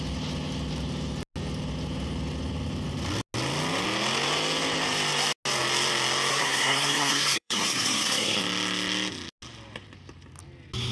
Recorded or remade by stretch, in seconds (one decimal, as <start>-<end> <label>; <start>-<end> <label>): 0.0-6.3 recorded; 6.3-8.4 remade; 8.4-10.9 recorded